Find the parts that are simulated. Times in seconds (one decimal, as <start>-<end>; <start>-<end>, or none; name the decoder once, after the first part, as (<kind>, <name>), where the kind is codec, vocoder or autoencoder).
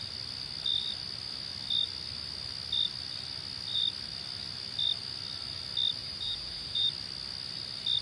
6.0-6.9 (vocoder, BigVGAN v2)